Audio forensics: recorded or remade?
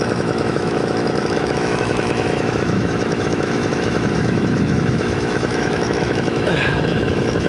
remade